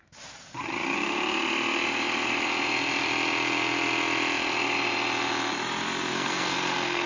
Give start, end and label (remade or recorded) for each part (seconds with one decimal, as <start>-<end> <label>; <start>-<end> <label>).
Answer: 0.0-6.1 recorded; 6.1-7.1 remade